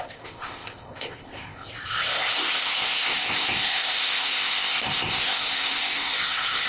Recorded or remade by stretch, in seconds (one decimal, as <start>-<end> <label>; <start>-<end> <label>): 0.0-6.7 remade